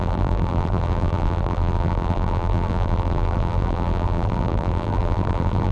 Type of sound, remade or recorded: remade